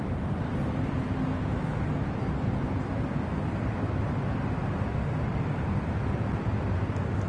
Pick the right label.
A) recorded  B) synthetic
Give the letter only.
B